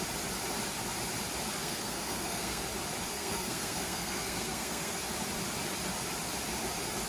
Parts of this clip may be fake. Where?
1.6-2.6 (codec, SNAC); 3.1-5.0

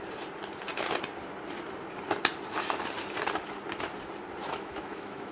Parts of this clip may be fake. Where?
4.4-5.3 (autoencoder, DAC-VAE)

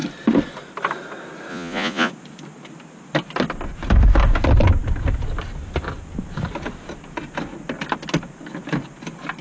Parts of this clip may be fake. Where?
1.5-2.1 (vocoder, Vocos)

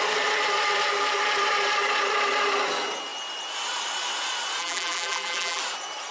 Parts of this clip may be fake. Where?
4.6-5.6 (vocoder, BigVGAN v2)

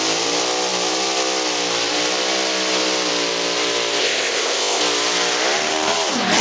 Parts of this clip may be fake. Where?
4.0-4.8 (codec, ZipCodec)

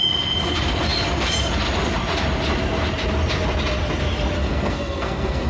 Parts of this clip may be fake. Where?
4.4-5.5 (codec, SNAC)